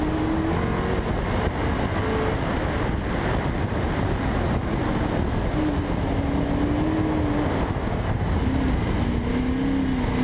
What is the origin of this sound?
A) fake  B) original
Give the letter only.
B